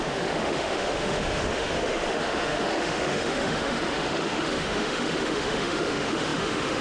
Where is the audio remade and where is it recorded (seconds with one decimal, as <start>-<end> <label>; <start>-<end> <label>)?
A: 0.0-6.8 remade